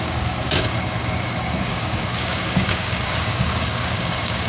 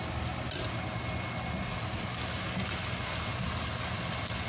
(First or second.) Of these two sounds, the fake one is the first